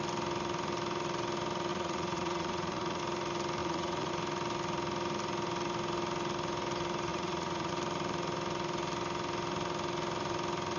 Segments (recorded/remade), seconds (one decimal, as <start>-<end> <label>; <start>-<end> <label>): 0.0-1.7 recorded; 1.7-3.0 remade; 3.0-3.6 recorded; 3.6-4.1 remade; 4.1-7.1 recorded; 7.1-7.7 remade; 7.7-10.8 recorded